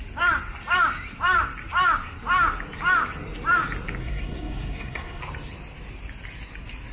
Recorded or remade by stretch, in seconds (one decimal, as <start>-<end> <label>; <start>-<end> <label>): 0.0-4.0 recorded; 4.0-5.2 remade; 5.2-6.9 recorded